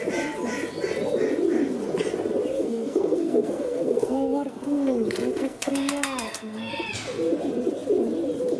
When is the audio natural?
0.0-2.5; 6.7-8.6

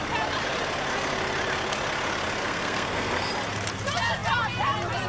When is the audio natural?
0.0-2.4; 3.3-5.1